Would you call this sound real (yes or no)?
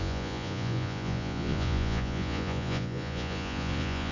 no